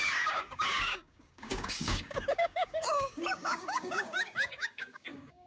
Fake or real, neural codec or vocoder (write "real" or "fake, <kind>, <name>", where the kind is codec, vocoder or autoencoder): fake, codec, DAC